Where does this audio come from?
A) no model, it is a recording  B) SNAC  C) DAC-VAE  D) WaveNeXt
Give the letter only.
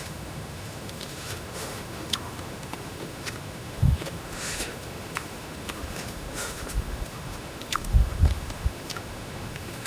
C